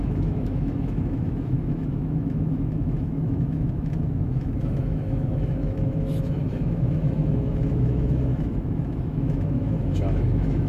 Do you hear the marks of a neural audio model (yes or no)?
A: yes